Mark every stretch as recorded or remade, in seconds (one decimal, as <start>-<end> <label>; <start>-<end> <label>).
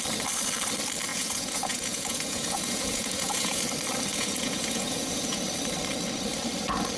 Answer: 0.0-1.1 recorded; 1.1-3.6 remade; 3.6-4.1 recorded; 4.1-5.4 remade; 5.4-7.0 recorded